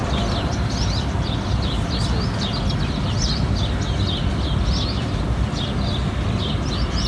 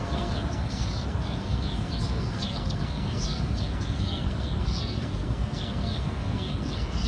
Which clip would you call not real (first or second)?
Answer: second